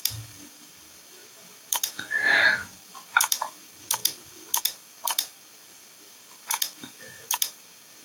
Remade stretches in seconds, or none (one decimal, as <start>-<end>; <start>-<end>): 0.0-8.0